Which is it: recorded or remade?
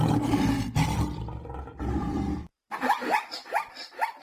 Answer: recorded